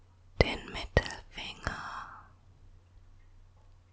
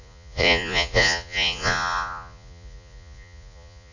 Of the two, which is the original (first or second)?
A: first